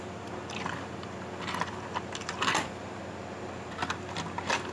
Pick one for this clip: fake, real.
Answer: fake